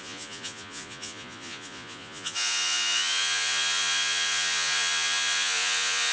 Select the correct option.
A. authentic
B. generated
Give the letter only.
B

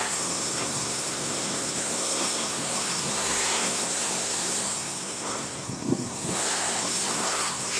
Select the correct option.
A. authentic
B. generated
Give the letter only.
B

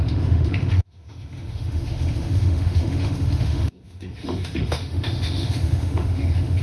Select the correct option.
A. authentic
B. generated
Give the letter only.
B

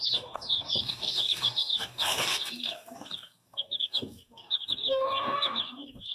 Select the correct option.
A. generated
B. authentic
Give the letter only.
A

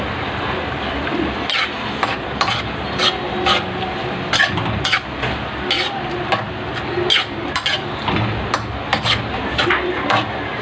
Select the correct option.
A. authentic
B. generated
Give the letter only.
A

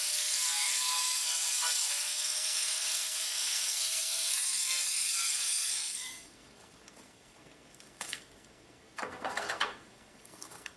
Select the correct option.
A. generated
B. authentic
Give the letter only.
A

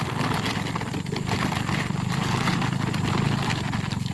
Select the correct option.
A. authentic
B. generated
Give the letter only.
A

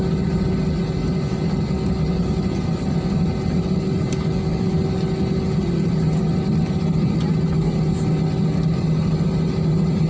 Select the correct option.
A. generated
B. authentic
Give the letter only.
B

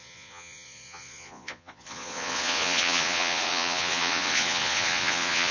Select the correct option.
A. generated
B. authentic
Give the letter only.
A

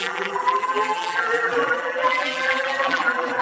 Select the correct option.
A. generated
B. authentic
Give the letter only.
A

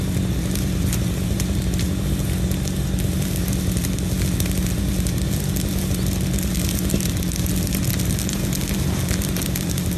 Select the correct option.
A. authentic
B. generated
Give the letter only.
A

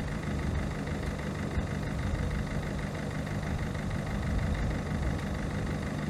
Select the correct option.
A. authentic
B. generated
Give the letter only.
A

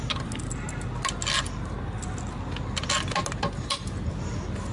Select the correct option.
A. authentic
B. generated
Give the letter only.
A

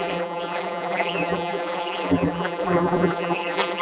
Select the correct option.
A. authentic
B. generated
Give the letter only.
B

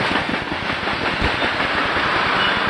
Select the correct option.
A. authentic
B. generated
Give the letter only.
A